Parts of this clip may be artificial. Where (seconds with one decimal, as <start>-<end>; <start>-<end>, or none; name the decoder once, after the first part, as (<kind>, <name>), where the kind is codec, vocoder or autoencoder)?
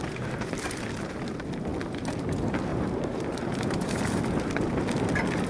2.7-4.0 (vocoder, BigVGAN v2)